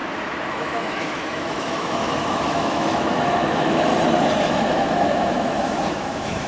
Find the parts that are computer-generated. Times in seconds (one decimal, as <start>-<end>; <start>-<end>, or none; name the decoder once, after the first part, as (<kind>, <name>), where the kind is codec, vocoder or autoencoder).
0.5-3.9 (autoencoder, DAC-VAE); 4.4-6.5